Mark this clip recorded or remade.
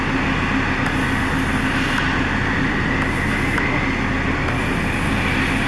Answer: recorded